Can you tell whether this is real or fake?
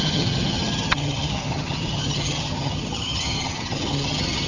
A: fake